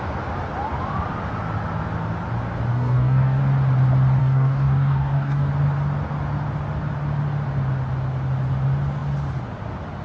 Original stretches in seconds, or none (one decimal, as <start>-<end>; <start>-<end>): 0.0-2.7; 3.4-4.2; 5.5-10.0